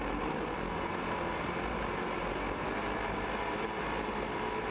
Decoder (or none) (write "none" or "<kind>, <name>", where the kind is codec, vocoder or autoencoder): none